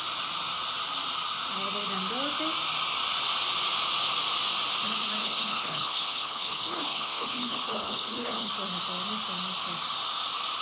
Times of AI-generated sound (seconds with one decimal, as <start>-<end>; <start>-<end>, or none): 5.2-8.5